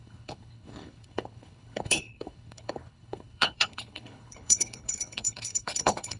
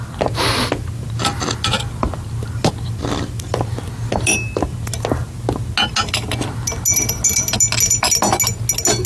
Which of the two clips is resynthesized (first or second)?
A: first